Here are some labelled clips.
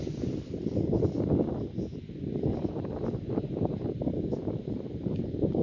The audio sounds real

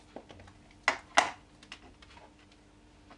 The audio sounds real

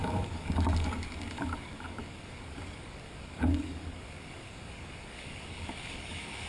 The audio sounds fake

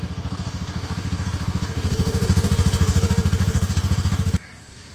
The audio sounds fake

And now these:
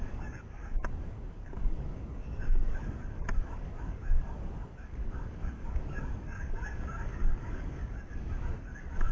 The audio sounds fake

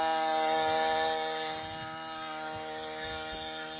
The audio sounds real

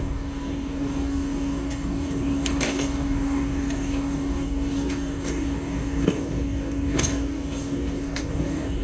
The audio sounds fake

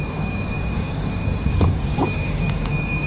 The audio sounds fake